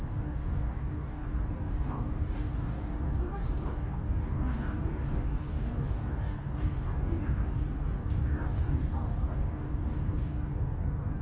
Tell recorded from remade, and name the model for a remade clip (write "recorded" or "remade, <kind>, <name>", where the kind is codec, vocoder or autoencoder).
remade, codec, DAC